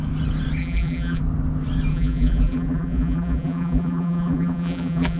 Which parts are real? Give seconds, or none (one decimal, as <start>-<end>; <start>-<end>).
0.0-0.6; 1.2-1.9

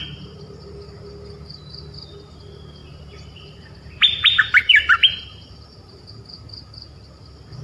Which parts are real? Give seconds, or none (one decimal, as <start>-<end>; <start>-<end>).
0.0-2.8; 6.1-7.6

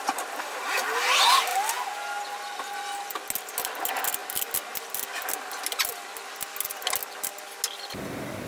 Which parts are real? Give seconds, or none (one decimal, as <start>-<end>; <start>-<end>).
0.6-8.5

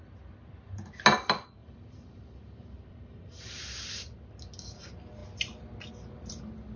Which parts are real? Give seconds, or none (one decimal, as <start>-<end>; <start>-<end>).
0.0-1.6; 3.6-6.8